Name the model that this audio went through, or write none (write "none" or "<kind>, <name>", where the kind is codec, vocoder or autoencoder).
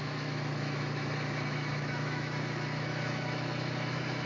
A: autoencoder, DAC-VAE